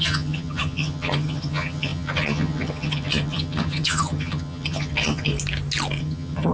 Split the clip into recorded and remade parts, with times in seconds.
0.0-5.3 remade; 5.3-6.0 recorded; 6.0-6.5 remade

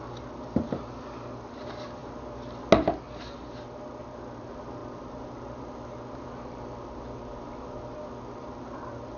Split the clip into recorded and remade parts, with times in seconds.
0.0-9.2 recorded

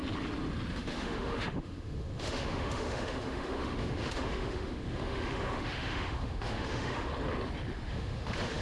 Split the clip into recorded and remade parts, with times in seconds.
0.0-0.7 recorded; 0.7-7.1 remade; 7.1-7.9 recorded; 7.9-8.6 remade

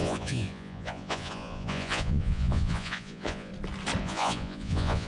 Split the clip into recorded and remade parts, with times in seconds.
0.0-3.5 remade; 3.5-4.0 recorded; 4.0-5.1 remade

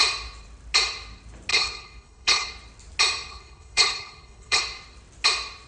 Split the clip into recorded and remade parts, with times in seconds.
0.0-1.5 recorded; 1.5-2.5 remade; 2.5-3.3 recorded; 3.3-4.6 remade; 4.6-5.7 recorded